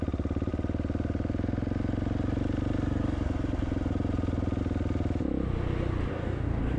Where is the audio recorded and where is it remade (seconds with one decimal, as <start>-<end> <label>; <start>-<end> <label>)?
0.0-6.1 recorded; 6.1-6.8 remade